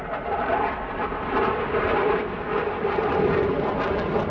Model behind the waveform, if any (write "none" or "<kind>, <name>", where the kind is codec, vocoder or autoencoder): none